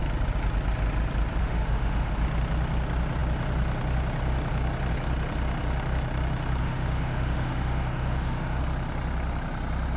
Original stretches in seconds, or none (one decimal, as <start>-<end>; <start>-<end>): 0.0-1.4; 2.1-6.6; 8.6-10.0